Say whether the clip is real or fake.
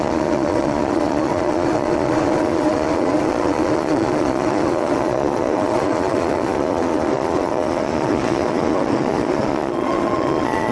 fake